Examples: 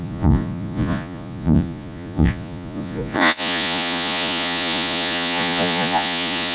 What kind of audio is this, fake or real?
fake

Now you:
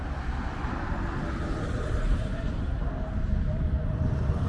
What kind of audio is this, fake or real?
real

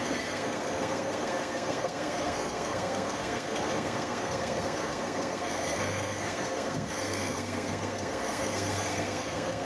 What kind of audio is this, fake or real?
fake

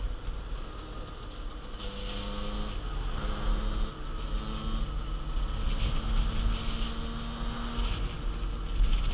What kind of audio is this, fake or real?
real